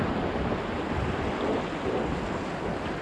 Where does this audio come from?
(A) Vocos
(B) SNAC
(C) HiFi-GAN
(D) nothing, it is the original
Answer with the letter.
D